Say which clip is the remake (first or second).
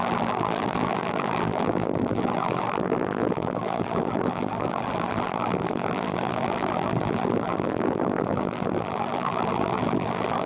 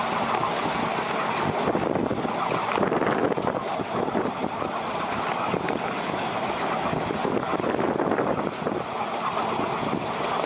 first